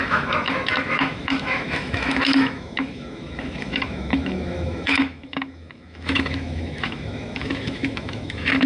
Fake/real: fake